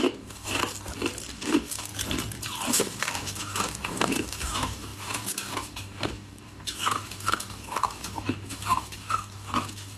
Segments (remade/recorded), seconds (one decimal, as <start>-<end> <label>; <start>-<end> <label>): 0.0-0.6 remade; 0.6-1.3 recorded; 1.3-1.9 remade; 1.9-2.7 recorded; 2.7-10.0 remade